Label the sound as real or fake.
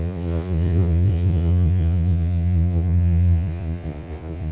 fake